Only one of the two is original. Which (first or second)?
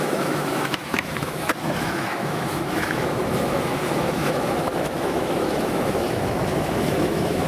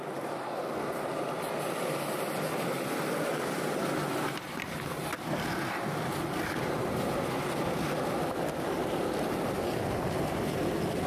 second